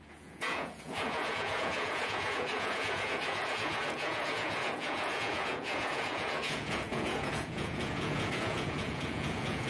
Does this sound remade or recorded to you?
remade